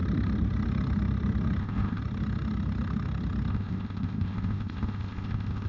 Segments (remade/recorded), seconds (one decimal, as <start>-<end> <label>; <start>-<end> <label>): 0.0-1.6 recorded; 1.6-2.0 remade; 2.0-3.5 recorded; 3.5-5.7 remade